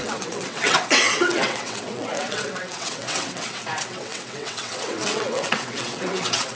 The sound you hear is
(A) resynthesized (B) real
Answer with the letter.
A